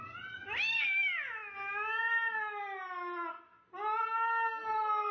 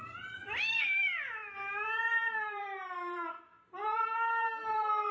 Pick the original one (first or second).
first